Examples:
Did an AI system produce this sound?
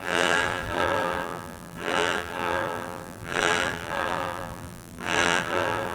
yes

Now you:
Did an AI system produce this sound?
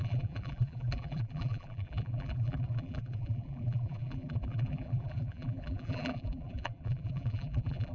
yes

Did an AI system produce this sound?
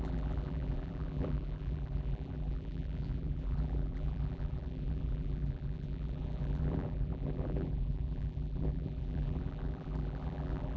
yes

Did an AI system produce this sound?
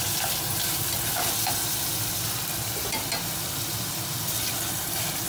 yes